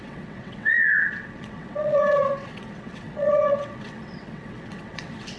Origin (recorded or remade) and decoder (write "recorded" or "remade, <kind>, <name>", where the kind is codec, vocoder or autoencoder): remade, vocoder, WaveNeXt